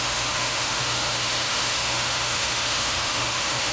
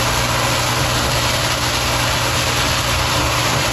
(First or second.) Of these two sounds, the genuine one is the second